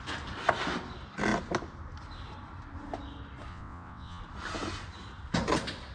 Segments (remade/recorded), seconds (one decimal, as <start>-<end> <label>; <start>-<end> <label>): 0.0-3.5 recorded; 3.5-4.2 remade; 4.2-5.9 recorded